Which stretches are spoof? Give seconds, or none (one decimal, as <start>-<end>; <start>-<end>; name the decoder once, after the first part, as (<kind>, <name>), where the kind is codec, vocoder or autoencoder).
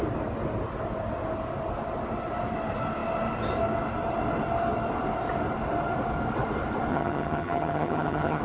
6.9-8.4 (vocoder, HiFi-GAN)